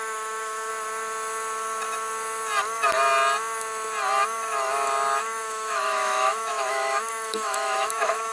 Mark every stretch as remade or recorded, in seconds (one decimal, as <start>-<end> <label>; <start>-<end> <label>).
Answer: 0.0-0.7 remade; 0.7-5.2 recorded; 5.2-8.3 remade